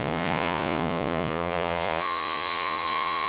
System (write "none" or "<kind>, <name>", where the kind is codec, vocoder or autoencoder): vocoder, Vocos